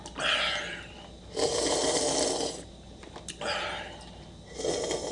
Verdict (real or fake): real